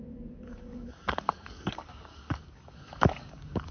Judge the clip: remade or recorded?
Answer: remade